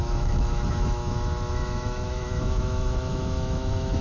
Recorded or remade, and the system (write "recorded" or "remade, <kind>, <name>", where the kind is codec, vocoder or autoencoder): remade, autoencoder, DAC-VAE